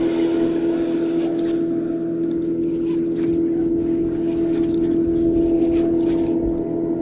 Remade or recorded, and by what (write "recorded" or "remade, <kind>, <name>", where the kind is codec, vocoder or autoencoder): recorded